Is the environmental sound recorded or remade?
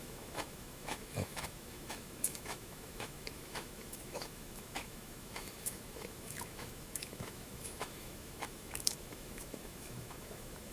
remade